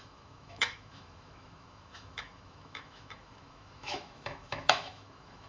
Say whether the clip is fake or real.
fake